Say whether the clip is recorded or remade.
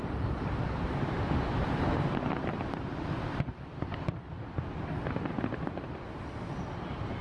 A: remade